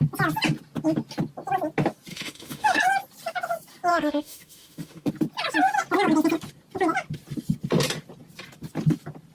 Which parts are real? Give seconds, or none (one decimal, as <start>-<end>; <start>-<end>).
0.0-2.1; 2.8-3.9; 5.1-9.3